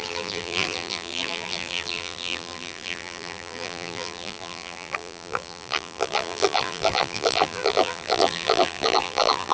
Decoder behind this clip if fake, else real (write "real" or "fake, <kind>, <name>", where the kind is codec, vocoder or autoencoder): fake, vocoder, BigVGAN v2